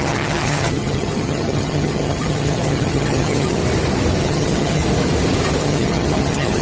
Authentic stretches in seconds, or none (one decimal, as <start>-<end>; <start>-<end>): 3.6-4.2; 4.8-5.6